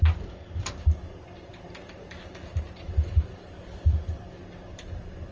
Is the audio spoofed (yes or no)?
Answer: no